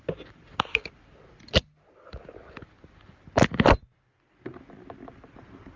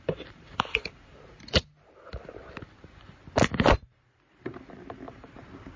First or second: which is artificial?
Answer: second